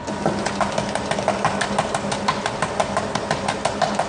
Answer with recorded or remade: recorded